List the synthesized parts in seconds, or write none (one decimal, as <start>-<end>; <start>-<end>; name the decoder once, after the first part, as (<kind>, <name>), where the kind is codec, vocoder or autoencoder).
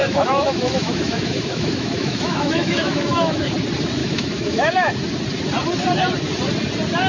0.0-3.5 (autoencoder, DAC-VAE); 4.0-4.9